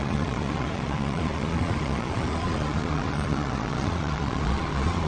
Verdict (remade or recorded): remade